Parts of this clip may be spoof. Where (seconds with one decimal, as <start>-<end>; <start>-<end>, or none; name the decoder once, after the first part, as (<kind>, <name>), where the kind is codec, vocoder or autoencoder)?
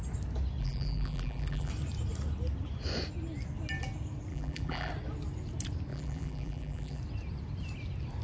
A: 0.6-1.7 (vocoder, BigVGAN v2); 4.3-4.9; 5.9-7.0